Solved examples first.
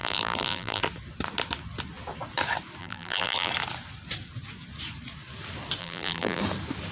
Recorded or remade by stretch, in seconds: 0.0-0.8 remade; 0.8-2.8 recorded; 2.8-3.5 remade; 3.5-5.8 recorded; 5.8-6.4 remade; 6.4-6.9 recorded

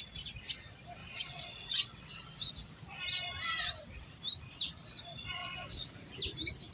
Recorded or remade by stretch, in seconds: 0.0-1.0 recorded; 1.0-2.5 remade; 2.5-5.4 recorded; 5.4-5.9 remade; 5.9-6.7 recorded

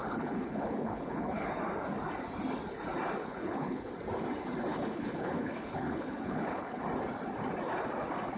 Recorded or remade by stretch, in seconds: 0.0-1.5 remade; 1.5-3.2 recorded; 3.2-3.9 remade; 3.9-4.7 recorded; 4.7-6.8 remade; 6.8-8.4 recorded

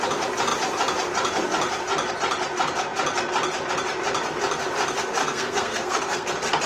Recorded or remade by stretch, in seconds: 0.0-5.2 recorded; 5.2-6.3 remade; 6.3-6.7 recorded

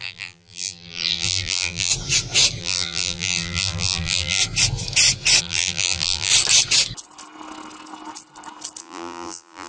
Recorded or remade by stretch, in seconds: 0.0-1.9 remade; 1.9-2.6 recorded; 2.6-4.4 remade; 4.4-5.4 recorded; 5.4-6.3 remade; 6.3-8.8 recorded; 8.8-9.7 remade